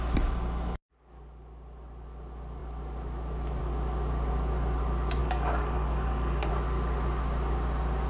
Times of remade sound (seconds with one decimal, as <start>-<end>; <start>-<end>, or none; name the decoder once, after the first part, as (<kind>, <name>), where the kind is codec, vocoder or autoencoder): 5.2-6.5 (codec, DAC)